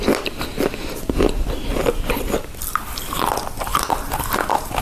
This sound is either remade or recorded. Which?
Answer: recorded